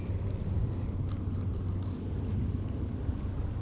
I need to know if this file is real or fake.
real